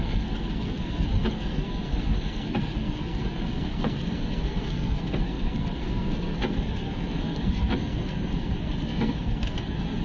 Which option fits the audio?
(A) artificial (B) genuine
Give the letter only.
A